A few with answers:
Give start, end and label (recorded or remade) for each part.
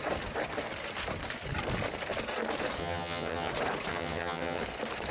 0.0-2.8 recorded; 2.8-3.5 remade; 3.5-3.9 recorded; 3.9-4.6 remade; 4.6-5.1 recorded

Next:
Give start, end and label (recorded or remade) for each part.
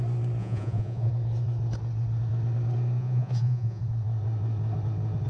0.0-0.4 recorded; 0.4-1.1 remade; 1.1-3.0 recorded; 3.0-3.8 remade; 3.8-5.3 recorded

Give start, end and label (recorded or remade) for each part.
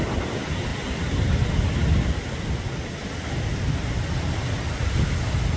0.0-5.6 recorded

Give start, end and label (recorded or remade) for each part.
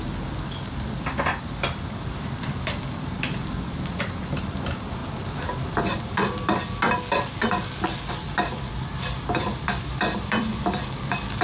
0.0-5.0 remade; 5.0-8.1 recorded; 8.1-11.4 remade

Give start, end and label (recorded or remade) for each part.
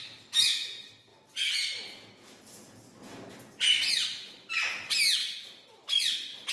0.0-6.5 recorded